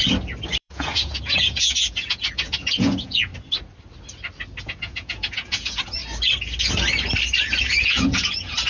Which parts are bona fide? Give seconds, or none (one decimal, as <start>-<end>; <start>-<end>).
0.0-0.6; 3.3-4.6; 6.0-7.6